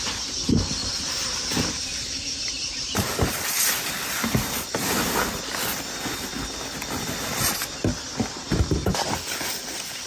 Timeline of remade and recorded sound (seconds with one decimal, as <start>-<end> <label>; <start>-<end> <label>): 0.0-0.8 recorded; 0.8-3.3 remade; 3.3-10.1 recorded